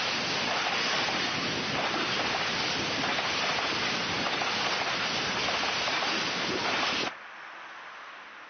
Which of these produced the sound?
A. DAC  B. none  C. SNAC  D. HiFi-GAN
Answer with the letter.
B